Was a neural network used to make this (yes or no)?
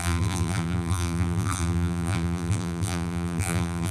yes